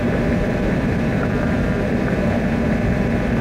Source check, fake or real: fake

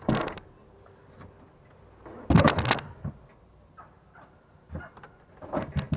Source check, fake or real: real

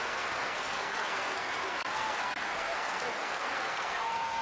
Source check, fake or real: fake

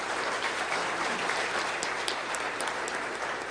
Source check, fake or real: fake